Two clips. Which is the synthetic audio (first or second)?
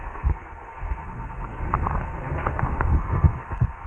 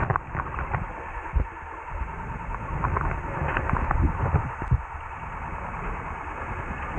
first